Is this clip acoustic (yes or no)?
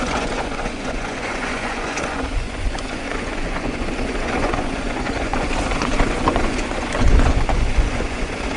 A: no